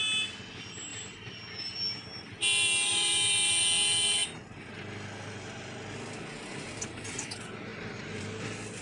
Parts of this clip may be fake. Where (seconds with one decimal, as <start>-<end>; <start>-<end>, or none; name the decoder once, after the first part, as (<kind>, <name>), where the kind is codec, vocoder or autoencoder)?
none